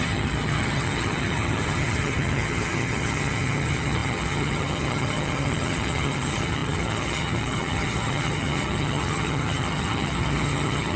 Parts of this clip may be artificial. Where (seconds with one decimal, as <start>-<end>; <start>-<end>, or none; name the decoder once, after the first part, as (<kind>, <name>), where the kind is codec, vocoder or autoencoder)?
0.0-11.0 (vocoder, HiFi-GAN)